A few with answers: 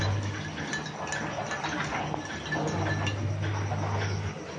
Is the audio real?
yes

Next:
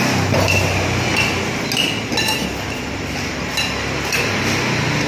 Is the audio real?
yes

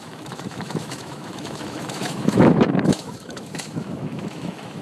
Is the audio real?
no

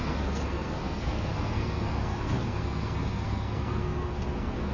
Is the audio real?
no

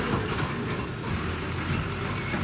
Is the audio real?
yes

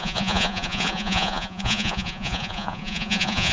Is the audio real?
no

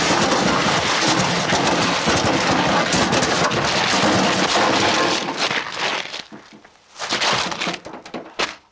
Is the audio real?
yes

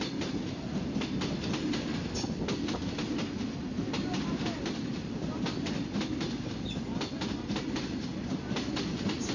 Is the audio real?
yes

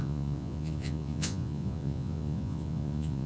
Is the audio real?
no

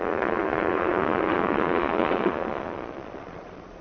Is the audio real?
no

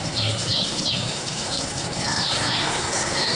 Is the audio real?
no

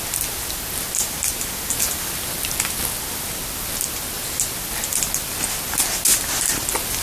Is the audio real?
yes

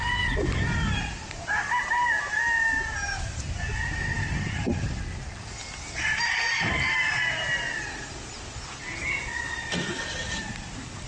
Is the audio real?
yes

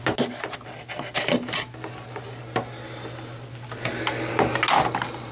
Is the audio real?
yes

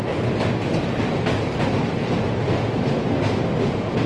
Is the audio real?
yes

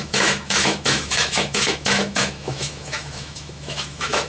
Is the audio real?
no